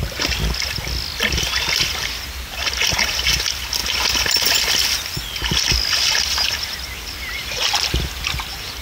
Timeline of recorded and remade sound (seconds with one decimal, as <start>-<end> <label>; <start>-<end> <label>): 0.0-8.8 recorded